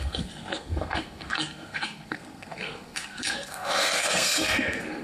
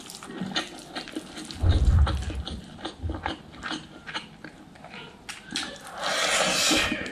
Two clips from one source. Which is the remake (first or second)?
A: first